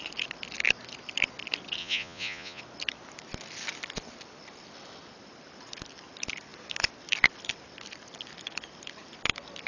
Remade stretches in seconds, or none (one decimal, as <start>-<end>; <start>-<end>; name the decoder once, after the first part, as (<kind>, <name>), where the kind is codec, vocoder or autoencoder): 1.8-2.6 (vocoder, Vocos)